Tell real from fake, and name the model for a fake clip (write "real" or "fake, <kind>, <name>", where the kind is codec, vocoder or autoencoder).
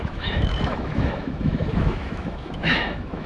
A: fake, autoencoder, DAC-VAE